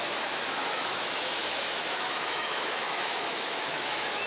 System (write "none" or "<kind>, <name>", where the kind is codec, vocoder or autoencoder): autoencoder, DAC-VAE